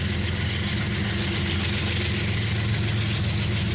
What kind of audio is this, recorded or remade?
recorded